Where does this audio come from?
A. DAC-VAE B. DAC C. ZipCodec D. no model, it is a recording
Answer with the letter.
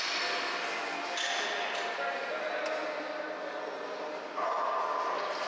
D